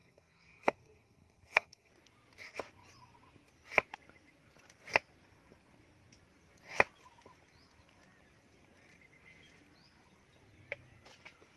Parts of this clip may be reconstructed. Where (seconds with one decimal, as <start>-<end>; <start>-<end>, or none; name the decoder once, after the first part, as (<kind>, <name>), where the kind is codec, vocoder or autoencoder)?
0.0-1.9 (codec, SNAC)